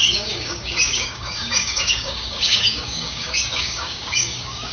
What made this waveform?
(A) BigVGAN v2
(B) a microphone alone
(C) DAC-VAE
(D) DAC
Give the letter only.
D